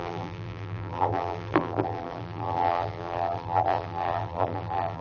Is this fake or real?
fake